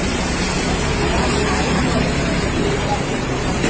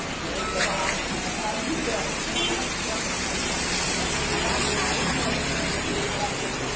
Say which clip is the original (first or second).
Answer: second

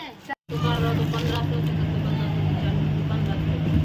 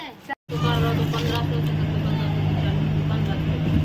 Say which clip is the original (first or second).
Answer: second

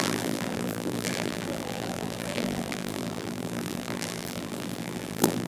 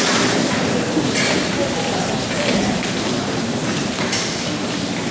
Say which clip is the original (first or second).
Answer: second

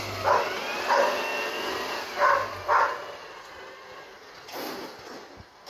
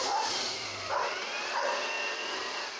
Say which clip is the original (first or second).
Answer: first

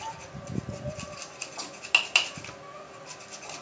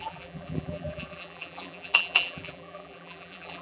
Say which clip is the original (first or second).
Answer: first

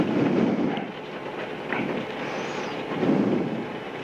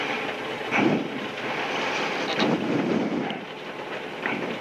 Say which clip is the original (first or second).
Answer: first